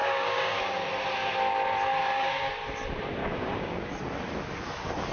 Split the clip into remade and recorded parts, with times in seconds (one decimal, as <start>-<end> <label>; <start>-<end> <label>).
0.0-0.6 remade; 0.6-2.0 recorded; 2.0-2.5 remade; 2.5-3.2 recorded; 3.2-3.9 remade; 3.9-5.1 recorded